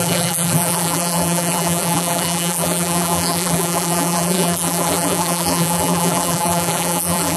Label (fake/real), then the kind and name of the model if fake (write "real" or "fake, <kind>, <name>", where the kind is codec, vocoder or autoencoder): fake, vocoder, BigVGAN v2